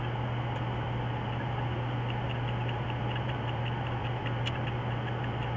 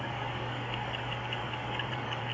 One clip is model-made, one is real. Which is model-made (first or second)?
second